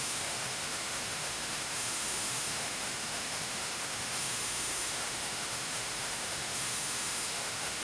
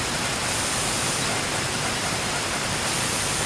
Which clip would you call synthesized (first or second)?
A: first